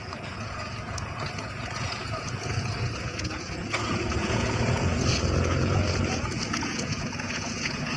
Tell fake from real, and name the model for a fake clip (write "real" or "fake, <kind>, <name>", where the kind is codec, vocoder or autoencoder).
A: fake, vocoder, Vocos